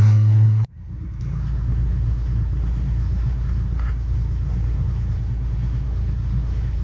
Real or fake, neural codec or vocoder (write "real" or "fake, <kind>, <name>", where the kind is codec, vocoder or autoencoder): fake, codec, SNAC